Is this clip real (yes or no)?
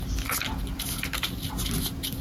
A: yes